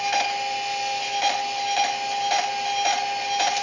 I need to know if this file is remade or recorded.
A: recorded